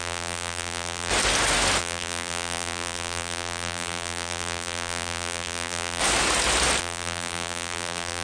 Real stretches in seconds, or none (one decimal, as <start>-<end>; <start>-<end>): 1.1-1.8; 6.0-6.8